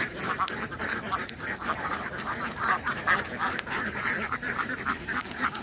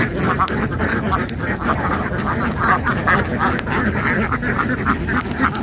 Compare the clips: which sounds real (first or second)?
second